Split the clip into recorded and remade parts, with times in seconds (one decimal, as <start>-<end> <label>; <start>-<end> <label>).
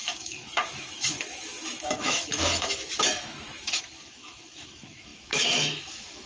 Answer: 0.0-6.3 remade